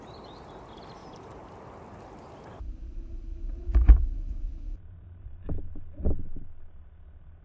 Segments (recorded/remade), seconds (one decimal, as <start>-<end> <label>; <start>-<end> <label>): 0.0-1.0 recorded; 1.0-5.4 remade; 5.4-7.4 recorded